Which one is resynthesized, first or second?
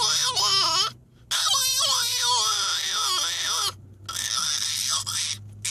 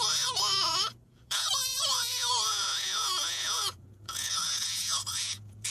second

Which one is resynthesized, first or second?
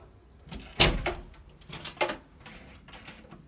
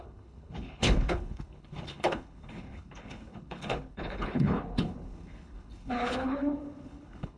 second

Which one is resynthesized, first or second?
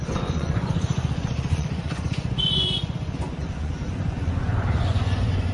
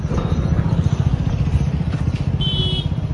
first